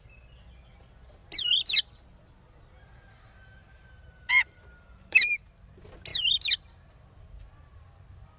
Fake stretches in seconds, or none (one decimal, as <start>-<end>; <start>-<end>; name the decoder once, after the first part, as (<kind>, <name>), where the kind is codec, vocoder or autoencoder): 3.6-5.5 (vocoder, BigVGAN v2)